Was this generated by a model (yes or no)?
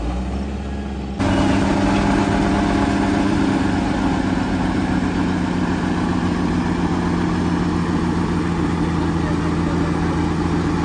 no